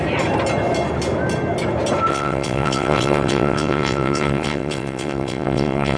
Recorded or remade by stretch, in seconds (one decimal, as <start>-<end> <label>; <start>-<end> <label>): 0.0-2.1 recorded; 2.1-6.0 remade